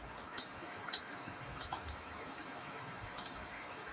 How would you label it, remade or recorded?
remade